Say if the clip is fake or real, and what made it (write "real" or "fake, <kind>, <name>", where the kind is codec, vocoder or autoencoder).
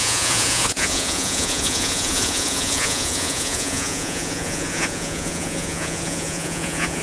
fake, vocoder, Vocos